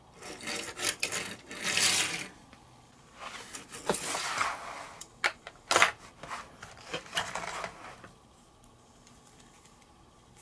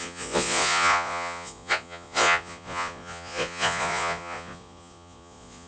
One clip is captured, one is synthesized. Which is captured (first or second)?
first